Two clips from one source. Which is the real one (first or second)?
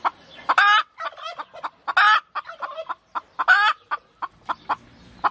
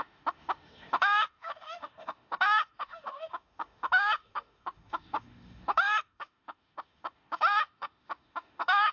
first